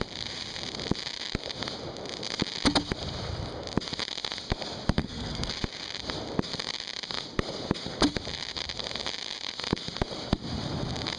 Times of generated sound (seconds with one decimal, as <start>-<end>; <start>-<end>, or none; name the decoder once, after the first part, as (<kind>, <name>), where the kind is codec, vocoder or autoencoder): 5.0-5.5 (codec, SNAC)